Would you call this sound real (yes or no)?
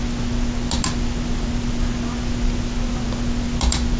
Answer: yes